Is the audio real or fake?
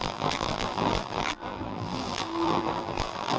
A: fake